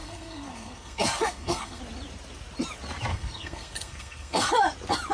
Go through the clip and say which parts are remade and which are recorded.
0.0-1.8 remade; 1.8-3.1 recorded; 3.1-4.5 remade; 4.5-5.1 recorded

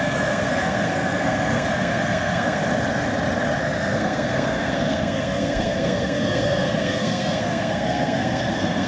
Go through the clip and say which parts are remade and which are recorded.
0.0-2.6 remade; 2.6-3.6 recorded; 3.6-8.9 remade

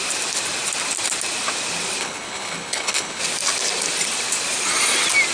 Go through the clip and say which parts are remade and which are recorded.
0.0-2.0 recorded; 2.0-3.2 remade; 3.2-5.3 recorded

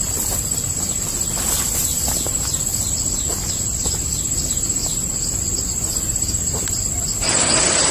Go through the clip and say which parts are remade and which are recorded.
0.0-2.7 remade; 2.7-3.3 recorded; 3.3-4.8 remade; 4.8-5.6 recorded; 5.6-7.9 remade

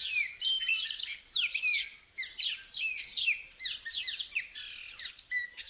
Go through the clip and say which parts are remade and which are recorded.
0.0-0.7 remade; 0.7-1.2 recorded; 1.2-1.7 remade; 1.7-5.1 recorded; 5.1-5.7 remade

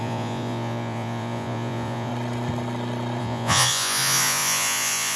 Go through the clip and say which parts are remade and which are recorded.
0.0-2.1 remade; 2.1-3.2 recorded; 3.2-5.2 remade

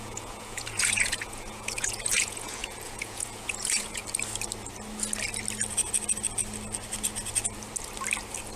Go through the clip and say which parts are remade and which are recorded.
0.0-4.0 remade; 4.0-8.6 recorded

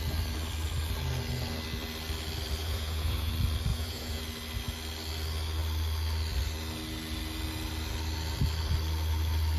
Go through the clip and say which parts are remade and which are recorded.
0.0-2.6 recorded; 2.6-3.3 remade; 3.3-3.7 recorded; 3.7-4.2 remade; 4.2-9.6 recorded